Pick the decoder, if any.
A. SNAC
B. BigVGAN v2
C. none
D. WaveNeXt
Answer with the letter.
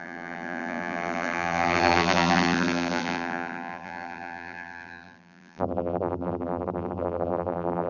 B